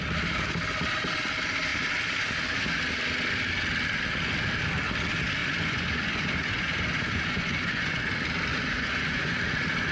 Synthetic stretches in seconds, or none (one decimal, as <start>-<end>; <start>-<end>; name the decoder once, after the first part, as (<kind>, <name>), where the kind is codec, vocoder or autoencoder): 5.4-8.0 (vocoder, Vocos); 8.5-9.4